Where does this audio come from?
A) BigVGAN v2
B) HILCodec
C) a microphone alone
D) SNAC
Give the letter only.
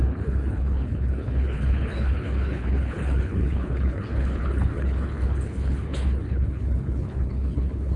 B